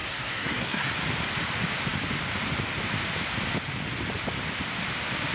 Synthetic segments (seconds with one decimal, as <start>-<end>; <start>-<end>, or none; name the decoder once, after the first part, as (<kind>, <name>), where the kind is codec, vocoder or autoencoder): 0.0-0.9 (codec, SNAC)